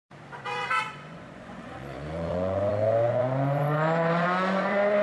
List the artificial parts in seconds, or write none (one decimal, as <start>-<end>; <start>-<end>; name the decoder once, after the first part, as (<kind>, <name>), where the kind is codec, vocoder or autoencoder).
0.0-5.0 (vocoder, Vocos)